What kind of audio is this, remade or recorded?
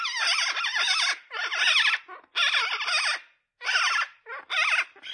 recorded